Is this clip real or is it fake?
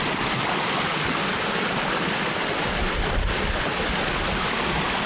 real